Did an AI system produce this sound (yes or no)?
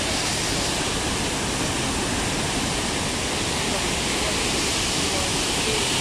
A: no